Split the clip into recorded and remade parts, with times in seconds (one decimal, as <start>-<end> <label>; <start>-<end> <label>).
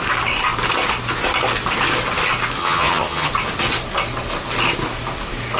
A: 0.0-2.6 recorded; 2.6-3.3 remade; 3.3-5.6 recorded